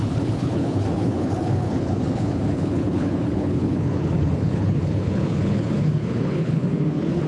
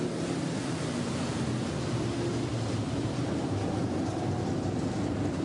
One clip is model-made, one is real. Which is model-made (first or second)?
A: first